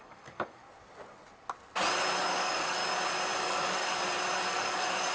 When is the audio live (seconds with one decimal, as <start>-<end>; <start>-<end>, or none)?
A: 0.6-2.2; 2.8-3.4; 3.9-4.5